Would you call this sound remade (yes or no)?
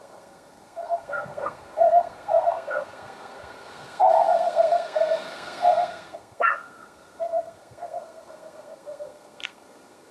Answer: yes